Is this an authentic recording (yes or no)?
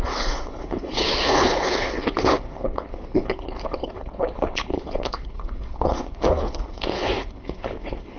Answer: no